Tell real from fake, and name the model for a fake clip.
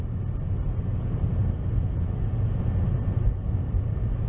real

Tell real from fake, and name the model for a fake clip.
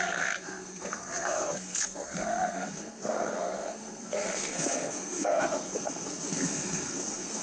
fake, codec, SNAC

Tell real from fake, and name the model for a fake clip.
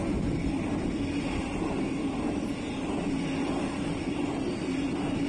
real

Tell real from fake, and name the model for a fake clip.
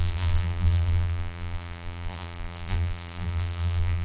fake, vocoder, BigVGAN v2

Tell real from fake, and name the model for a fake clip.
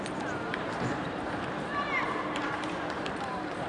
fake, vocoder, BigVGAN v2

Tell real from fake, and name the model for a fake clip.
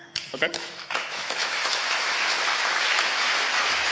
fake, autoencoder, DAC-VAE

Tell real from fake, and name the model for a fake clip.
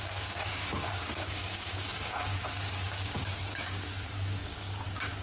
fake, codec, DAC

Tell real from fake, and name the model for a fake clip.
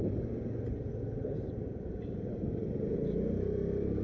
real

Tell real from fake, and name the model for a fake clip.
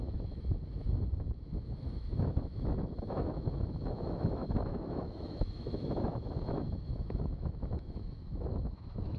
fake, autoencoder, DAC-VAE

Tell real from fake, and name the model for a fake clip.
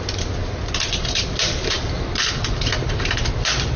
fake, vocoder, BigVGAN v2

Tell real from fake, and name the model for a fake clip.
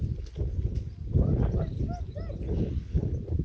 real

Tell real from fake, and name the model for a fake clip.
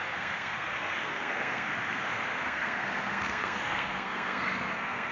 fake, codec, SNAC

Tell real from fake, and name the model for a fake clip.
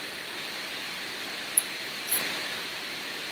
fake, vocoder, BigVGAN v2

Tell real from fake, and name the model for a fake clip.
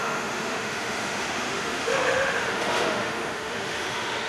fake, autoencoder, DAC-VAE